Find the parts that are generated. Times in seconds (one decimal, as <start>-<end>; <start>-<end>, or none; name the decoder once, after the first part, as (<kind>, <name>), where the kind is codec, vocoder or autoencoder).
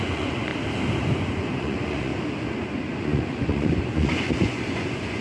0.0-0.5 (vocoder, Vocos); 1.3-2.1; 3.0-5.2